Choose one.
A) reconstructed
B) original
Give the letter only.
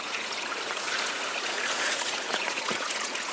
A